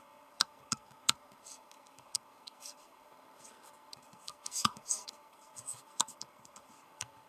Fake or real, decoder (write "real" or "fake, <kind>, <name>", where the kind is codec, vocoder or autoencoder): fake, codec, SNAC